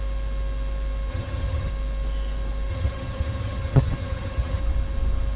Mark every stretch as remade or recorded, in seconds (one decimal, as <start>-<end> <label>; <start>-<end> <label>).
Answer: 0.0-1.1 recorded; 1.1-1.7 remade; 1.7-2.7 recorded; 2.7-4.6 remade; 4.6-5.4 recorded